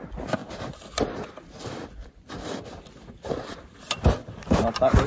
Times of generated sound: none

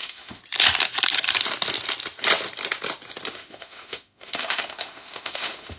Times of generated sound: 0.0-0.4 (autoencoder, DAC-VAE); 3.3-5.8